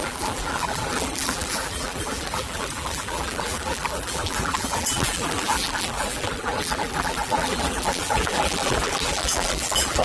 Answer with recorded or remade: remade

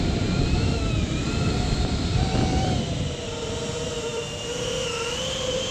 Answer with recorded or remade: remade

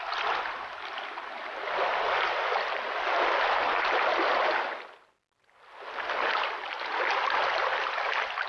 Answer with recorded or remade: recorded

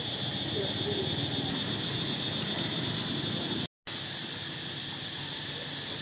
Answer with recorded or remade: recorded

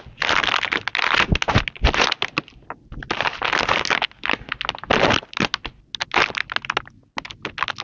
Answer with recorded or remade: recorded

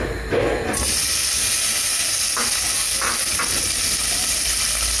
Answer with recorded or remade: recorded